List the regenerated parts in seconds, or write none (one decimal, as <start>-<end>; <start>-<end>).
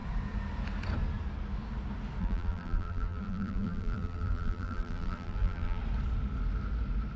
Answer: 2.2-5.8